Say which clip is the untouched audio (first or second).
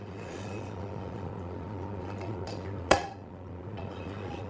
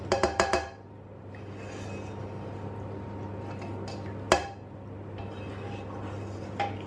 second